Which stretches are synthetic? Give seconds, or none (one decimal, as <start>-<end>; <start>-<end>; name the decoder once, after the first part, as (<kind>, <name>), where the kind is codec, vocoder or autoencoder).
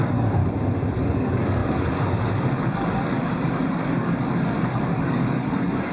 0.0-0.4 (codec, DAC); 0.9-5.9